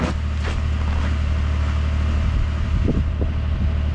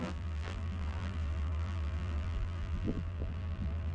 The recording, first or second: first